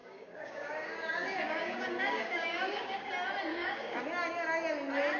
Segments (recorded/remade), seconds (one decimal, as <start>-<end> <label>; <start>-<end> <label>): 0.0-3.1 remade; 3.1-3.5 recorded; 3.5-4.0 remade; 4.0-5.2 recorded